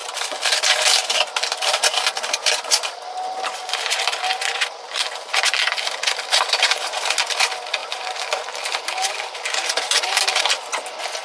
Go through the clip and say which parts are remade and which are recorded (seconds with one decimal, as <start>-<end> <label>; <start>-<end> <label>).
0.0-2.8 remade; 2.8-3.6 recorded; 3.6-7.2 remade; 7.2-7.8 recorded; 7.8-10.4 remade; 10.4-11.2 recorded